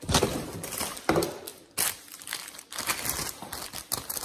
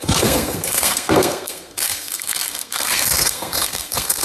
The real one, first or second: first